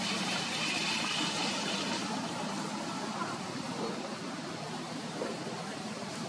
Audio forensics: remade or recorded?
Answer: remade